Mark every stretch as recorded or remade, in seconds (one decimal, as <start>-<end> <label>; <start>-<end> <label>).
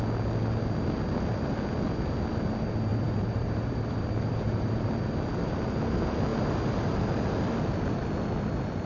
0.0-2.9 recorded; 2.9-4.9 remade; 4.9-6.3 recorded; 6.3-7.0 remade; 7.0-8.9 recorded